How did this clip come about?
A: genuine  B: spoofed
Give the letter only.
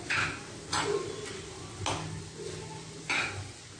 A